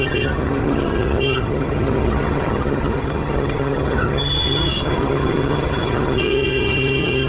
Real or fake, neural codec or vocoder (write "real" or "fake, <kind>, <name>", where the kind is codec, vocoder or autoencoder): fake, vocoder, HiFi-GAN